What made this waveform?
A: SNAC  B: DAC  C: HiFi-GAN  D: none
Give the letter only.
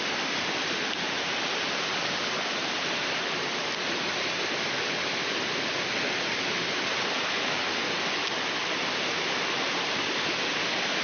D